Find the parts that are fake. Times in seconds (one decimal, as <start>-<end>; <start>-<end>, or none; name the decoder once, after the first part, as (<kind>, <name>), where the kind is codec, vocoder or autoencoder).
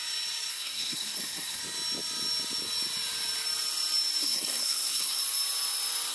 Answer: 0.5-1.6 (codec, SNAC); 4.2-5.2